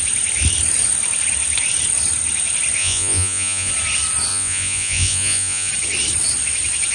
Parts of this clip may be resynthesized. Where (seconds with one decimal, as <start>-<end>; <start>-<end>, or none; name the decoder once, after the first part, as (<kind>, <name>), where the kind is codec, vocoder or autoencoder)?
2.8-3.7 (vocoder, Vocos); 4.3-5.7